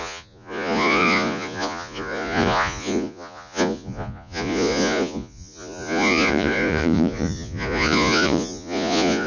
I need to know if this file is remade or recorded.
remade